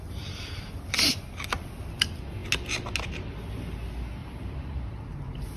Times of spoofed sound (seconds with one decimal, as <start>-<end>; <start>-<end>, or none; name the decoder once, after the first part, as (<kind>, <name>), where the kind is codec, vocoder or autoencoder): 4.2-5.6 (vocoder, BigVGAN v2)